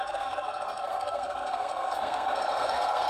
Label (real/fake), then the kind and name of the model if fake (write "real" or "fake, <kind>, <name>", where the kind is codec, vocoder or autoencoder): fake, codec, SNAC